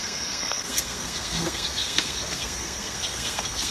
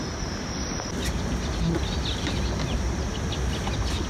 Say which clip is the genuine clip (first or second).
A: second